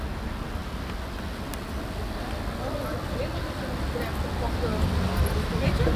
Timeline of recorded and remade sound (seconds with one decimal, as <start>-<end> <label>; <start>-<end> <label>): 0.0-6.0 recorded